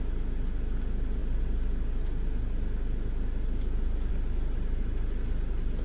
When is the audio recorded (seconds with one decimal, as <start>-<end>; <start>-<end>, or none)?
0.0-5.8

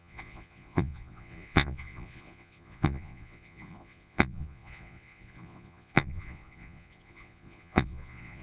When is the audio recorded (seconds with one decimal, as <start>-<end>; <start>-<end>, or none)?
none

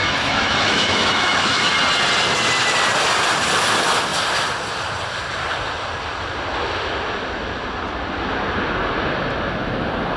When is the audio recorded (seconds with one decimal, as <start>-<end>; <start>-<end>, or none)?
1.7-10.2

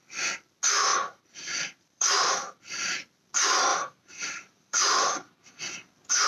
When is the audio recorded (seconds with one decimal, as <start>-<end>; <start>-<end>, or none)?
0.0-0.9; 2.6-3.7; 5.6-6.3

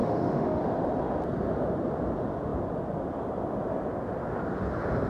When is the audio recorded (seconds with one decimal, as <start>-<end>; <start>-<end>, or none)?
0.6-5.1

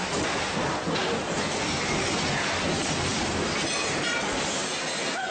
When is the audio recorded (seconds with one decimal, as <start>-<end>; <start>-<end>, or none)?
0.0-5.3